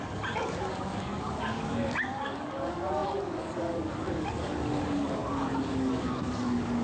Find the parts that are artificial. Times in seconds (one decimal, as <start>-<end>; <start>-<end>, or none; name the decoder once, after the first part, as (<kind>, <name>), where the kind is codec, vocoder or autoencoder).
0.0-6.8 (codec, DAC)